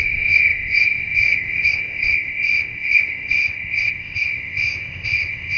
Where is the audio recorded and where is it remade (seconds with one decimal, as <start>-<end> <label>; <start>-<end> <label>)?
0.0-5.6 remade